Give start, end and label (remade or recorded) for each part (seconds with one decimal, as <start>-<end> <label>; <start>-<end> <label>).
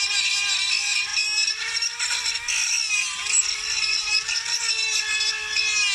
0.0-5.9 recorded